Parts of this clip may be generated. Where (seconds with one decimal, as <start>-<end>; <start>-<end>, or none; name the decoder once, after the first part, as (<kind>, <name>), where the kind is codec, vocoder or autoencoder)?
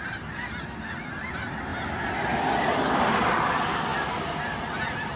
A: none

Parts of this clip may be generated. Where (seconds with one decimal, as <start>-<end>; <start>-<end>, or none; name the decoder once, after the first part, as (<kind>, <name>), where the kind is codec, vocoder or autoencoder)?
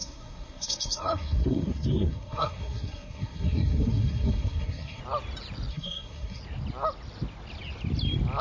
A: 0.0-5.0 (codec, SNAC); 5.7-6.4